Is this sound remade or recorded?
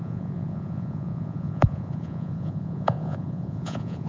remade